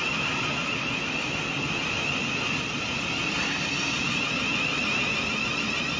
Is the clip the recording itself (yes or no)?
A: yes